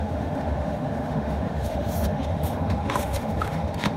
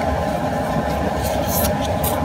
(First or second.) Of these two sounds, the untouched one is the second